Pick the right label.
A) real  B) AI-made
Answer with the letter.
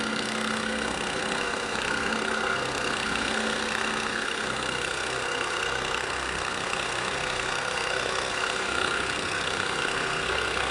B